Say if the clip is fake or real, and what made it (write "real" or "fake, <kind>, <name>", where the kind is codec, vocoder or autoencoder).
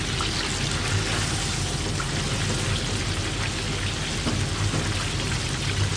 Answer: real